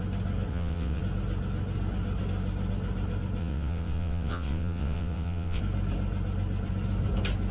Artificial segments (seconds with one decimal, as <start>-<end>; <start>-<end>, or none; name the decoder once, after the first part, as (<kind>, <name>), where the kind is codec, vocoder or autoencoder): 0.5-1.0 (vocoder, WaveNeXt); 3.4-5.6